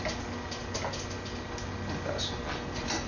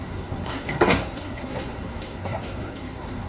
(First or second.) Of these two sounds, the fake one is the second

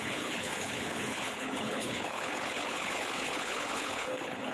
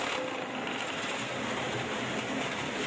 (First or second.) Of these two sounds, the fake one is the first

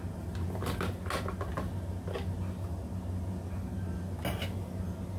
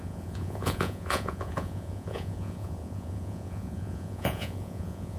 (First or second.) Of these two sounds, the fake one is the second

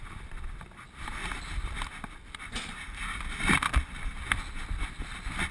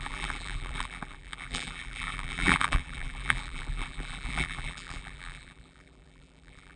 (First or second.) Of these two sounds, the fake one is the second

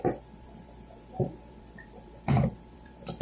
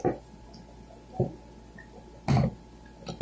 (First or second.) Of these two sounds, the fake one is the first